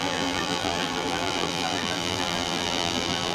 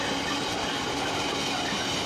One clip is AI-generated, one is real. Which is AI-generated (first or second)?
first